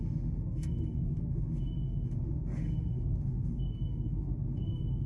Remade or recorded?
remade